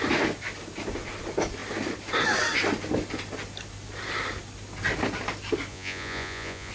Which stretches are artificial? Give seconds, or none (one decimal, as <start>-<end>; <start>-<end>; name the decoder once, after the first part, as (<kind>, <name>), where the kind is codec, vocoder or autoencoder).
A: 5.7-6.7 (vocoder, Vocos)